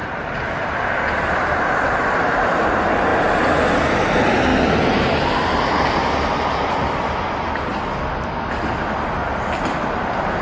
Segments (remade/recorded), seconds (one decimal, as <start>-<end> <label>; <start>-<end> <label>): 0.0-3.1 remade; 3.1-3.9 recorded; 3.9-7.7 remade; 7.7-9.6 recorded; 9.6-10.4 remade